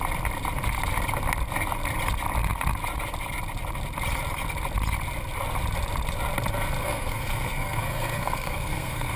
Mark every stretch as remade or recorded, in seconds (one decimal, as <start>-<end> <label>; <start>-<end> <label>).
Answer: 0.0-6.8 recorded; 6.8-9.2 remade